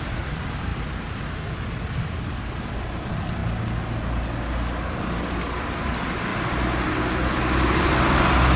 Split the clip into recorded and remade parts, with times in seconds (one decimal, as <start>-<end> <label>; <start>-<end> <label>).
0.0-3.4 remade; 3.4-5.0 recorded; 5.0-6.3 remade; 6.3-7.8 recorded; 7.8-8.6 remade